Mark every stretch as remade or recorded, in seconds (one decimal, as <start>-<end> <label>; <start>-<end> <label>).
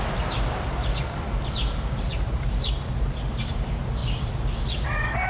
0.0-4.0 remade; 4.0-5.3 recorded